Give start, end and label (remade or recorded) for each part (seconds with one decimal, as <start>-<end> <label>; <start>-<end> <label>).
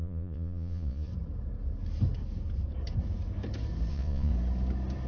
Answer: 0.0-1.1 remade; 1.1-3.9 recorded; 3.9-4.3 remade; 4.3-5.1 recorded